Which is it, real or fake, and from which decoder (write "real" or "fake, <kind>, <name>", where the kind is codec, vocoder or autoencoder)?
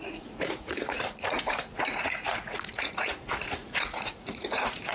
fake, vocoder, Vocos